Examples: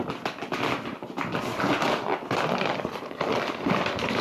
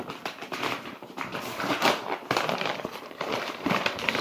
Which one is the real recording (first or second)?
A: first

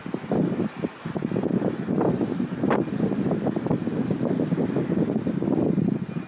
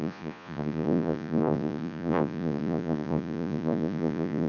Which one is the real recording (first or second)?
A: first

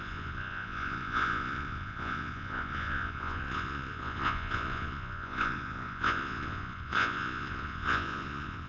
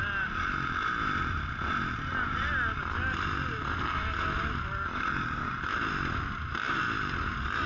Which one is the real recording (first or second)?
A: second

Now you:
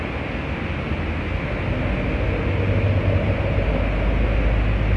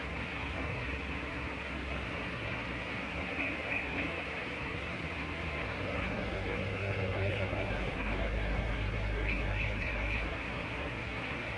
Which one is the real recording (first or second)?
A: first